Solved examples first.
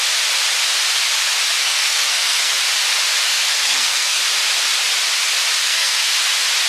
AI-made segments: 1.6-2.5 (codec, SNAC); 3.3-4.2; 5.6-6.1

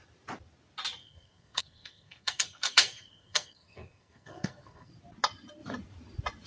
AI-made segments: 1.0-4.9 (codec, SNAC)

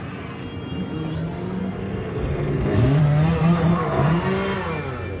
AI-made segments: 1.6-3.0 (codec, SNAC)

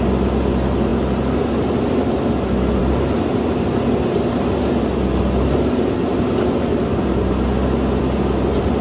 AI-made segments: none

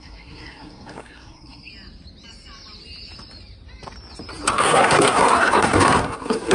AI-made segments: 0.0-1.7 (codec, SNAC); 4.5-6.5